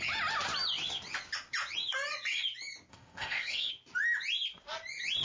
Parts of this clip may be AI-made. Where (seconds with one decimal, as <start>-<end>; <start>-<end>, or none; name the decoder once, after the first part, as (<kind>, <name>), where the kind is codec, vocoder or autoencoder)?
2.9-3.7 (codec, ZipCodec)

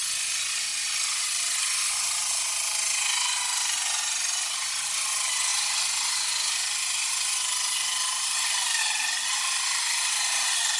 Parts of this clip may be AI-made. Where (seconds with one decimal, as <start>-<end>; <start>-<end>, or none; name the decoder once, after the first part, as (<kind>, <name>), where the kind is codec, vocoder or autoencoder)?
none

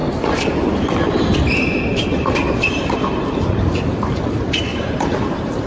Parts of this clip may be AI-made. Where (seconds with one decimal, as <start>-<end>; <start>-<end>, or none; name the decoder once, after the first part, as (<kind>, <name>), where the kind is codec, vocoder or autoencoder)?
3.4-5.7 (vocoder, BigVGAN v2)

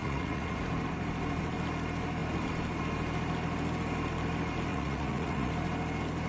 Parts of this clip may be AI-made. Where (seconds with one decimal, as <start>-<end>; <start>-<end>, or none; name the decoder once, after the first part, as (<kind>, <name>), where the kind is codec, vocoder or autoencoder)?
0.0-0.6 (vocoder, Vocos); 4.7-5.5

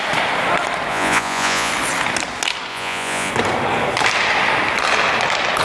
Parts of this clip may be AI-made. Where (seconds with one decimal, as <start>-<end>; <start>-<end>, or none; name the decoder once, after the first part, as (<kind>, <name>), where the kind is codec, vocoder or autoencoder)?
0.9-1.7 (vocoder, Vocos); 2.7-3.3

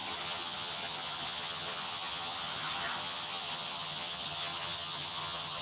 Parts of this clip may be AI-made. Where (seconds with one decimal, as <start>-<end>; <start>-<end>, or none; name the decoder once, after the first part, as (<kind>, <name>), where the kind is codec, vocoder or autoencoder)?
0.0-5.6 (vocoder, HiFi-GAN)

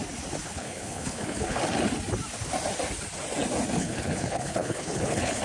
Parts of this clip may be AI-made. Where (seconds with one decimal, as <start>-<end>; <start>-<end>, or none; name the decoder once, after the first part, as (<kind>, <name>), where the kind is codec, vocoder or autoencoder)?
0.4-1.6 (codec, HILCodec); 3.8-5.4